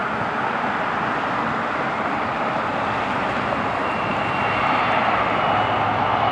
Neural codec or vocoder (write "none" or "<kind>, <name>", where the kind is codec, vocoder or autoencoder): none